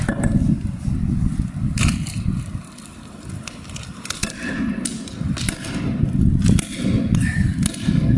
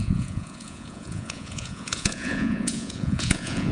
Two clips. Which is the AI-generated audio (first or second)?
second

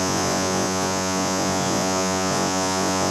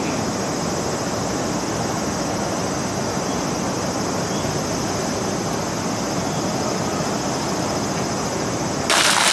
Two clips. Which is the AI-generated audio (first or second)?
first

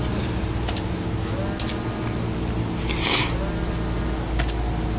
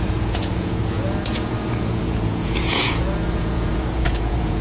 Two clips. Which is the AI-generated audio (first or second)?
second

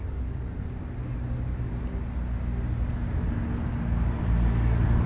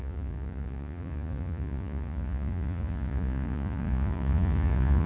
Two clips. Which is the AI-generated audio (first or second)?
second